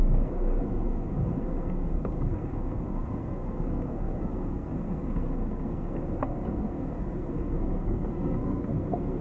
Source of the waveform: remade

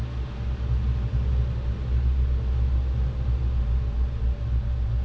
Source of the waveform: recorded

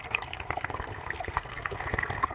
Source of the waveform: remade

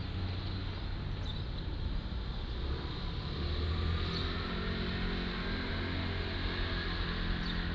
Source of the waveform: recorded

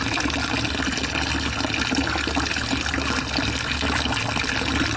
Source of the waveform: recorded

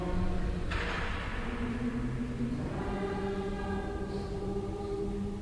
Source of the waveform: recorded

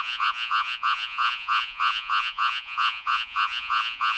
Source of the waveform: remade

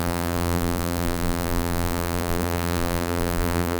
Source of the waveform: remade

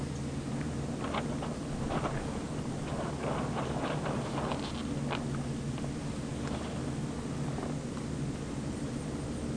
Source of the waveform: recorded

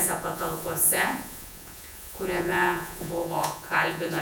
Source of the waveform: remade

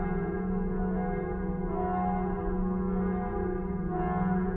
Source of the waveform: recorded